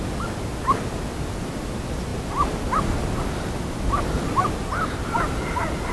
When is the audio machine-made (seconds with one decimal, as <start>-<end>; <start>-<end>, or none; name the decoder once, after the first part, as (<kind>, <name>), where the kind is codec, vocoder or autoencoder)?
none